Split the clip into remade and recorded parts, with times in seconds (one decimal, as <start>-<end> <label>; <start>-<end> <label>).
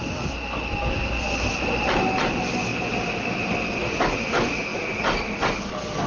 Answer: 0.0-2.7 recorded; 2.7-4.0 remade; 4.0-6.1 recorded